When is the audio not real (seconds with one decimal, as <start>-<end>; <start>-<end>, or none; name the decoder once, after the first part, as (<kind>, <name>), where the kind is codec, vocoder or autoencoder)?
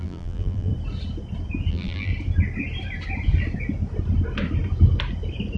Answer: 0.0-0.7 (vocoder, BigVGAN v2); 1.7-2.1